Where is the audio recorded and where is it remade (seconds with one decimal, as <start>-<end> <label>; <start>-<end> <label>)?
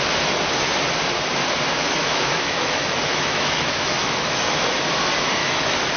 0.0-2.0 recorded; 2.0-4.4 remade; 4.4-5.4 recorded; 5.4-6.0 remade